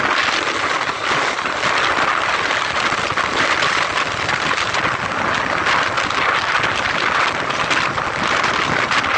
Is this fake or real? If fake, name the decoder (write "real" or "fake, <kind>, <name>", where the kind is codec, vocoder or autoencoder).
real